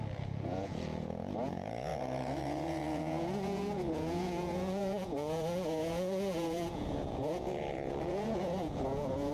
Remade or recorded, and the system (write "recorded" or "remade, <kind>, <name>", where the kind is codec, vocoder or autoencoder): remade, vocoder, Vocos